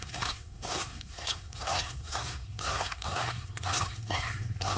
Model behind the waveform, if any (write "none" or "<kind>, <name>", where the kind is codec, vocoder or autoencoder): codec, SNAC